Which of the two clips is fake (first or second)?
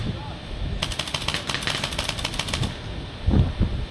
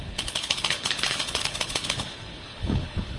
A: second